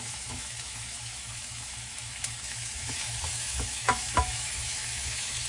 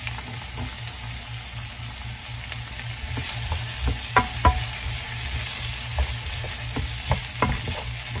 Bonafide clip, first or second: second